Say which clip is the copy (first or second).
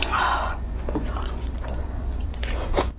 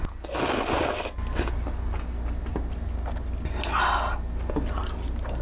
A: first